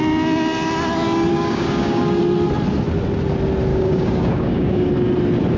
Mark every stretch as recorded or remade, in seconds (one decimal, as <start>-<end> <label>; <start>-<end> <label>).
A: 0.0-1.3 recorded; 1.3-2.2 remade; 2.2-3.7 recorded; 3.7-4.9 remade; 4.9-5.6 recorded